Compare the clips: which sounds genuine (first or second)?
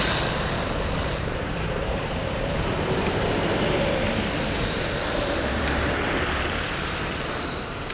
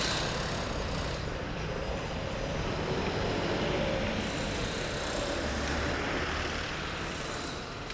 second